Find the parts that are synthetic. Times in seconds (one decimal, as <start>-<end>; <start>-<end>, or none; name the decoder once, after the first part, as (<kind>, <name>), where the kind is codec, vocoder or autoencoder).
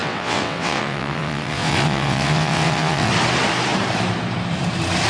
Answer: 0.0-3.1 (vocoder, WaveNeXt)